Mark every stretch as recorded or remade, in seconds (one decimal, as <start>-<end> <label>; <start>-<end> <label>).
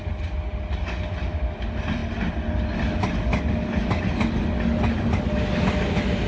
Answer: 0.0-6.3 recorded